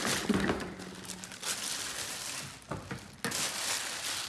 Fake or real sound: real